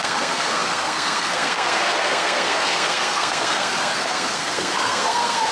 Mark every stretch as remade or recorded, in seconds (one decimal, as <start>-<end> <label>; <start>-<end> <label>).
0.0-5.5 remade